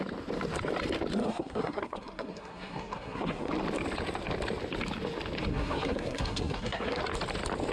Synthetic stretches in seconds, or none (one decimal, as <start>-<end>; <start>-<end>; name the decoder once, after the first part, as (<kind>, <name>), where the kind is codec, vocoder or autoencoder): 1.2-3.5 (codec, SNAC); 5.5-7.0